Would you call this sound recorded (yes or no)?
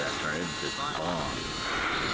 yes